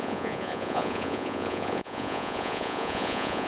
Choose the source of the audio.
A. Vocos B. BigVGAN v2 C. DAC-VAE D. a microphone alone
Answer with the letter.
A